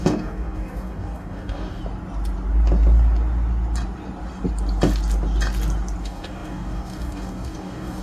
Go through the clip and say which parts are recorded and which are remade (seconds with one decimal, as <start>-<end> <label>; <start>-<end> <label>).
0.0-1.8 remade; 1.8-6.0 recorded; 6.0-8.0 remade